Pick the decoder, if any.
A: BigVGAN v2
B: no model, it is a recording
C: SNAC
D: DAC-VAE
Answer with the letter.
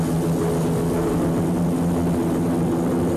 B